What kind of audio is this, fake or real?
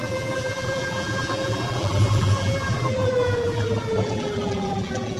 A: fake